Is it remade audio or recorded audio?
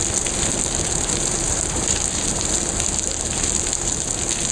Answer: recorded